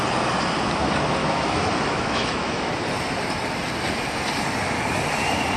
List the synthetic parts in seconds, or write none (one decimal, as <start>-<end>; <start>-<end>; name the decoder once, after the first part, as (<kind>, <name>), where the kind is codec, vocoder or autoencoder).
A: 1.2-2.7 (autoencoder, DAC-VAE)